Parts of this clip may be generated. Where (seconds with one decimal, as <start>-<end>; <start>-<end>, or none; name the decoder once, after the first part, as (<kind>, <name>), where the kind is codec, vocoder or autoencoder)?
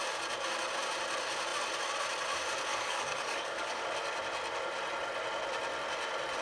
2.7-3.8 (codec, DAC)